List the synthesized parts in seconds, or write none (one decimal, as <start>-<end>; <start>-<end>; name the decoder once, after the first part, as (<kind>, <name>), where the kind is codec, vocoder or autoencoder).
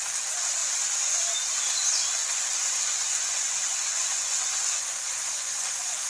0.6-1.2 (vocoder, Vocos); 2.2-6.1